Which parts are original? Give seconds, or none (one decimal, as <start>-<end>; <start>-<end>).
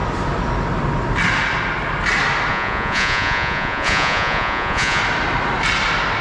0.0-2.5; 5.0-6.2